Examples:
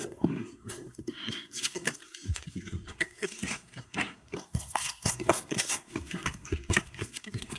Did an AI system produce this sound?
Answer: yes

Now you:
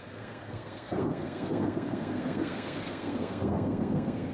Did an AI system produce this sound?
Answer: yes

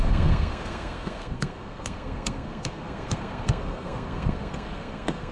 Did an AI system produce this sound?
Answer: yes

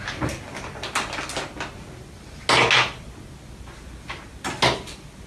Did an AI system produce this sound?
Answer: no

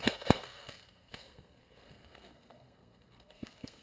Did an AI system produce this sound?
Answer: yes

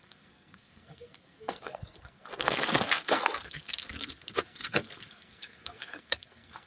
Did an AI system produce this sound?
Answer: yes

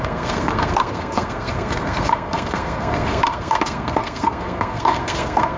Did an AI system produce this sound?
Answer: yes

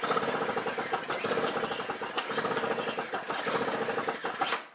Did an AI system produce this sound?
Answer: no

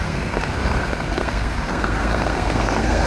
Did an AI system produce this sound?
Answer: yes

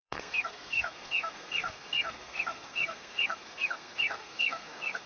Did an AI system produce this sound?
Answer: yes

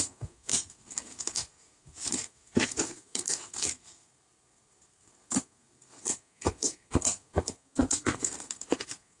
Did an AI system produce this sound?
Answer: yes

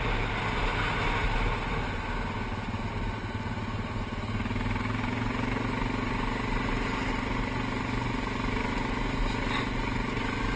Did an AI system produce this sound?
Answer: no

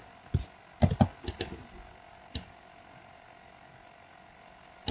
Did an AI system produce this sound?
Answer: no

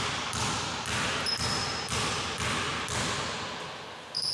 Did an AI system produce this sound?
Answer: no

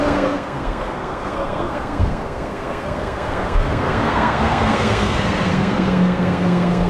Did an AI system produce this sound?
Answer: yes